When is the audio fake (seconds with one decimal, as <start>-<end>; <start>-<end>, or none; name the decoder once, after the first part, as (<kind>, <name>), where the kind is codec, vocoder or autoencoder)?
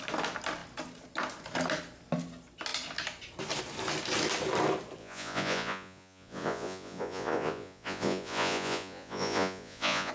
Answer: 5.0-10.1 (vocoder, Vocos)